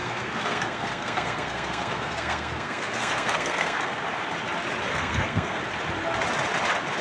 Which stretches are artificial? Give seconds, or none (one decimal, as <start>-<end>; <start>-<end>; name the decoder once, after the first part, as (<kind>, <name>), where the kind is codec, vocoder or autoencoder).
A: 0.0-4.0 (codec, SNAC); 4.9-5.6